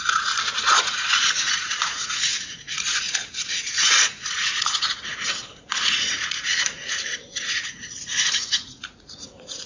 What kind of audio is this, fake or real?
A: fake